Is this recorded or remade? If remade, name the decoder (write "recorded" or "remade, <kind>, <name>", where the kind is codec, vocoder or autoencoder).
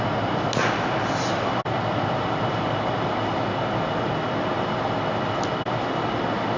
recorded